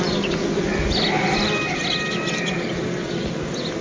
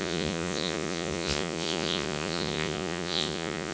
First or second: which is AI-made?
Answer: second